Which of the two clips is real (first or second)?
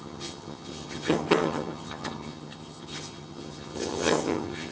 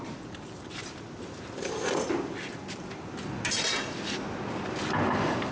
second